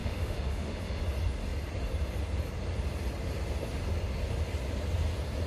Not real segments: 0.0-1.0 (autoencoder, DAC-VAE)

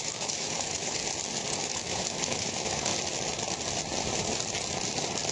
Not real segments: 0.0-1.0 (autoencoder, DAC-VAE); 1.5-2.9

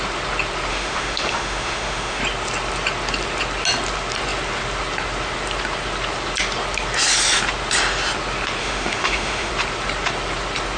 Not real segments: 0.7-2.2 (autoencoder, DAC-VAE); 8.6-9.5